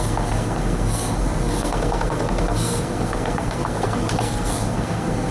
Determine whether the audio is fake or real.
fake